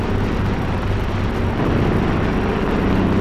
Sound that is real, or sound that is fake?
real